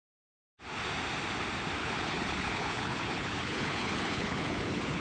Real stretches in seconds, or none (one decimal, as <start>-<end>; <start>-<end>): 0.0-1.8